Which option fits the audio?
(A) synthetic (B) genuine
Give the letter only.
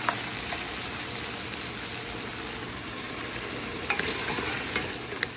B